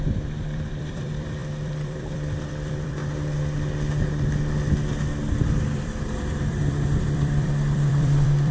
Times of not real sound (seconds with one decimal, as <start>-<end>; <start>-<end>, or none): 0.0-3.0; 5.3-8.5